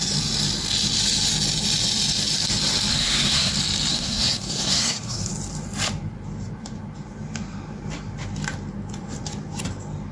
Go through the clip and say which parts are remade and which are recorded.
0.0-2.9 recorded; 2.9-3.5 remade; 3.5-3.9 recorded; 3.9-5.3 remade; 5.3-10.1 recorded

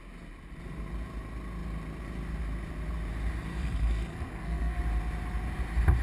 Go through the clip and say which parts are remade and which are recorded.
0.0-3.5 recorded; 3.5-4.8 remade; 4.8-6.0 recorded

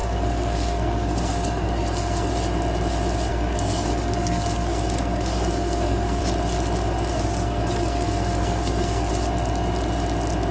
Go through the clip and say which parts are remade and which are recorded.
0.0-2.3 remade; 2.3-3.3 recorded; 3.3-6.2 remade; 6.2-7.1 recorded; 7.1-9.1 remade; 9.1-10.5 recorded